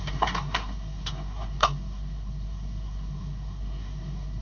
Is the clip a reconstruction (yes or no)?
yes